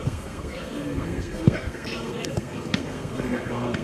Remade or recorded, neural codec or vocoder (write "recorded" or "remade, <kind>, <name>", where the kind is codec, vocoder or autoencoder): remade, codec, SNAC